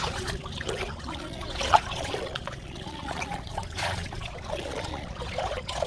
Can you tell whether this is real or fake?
fake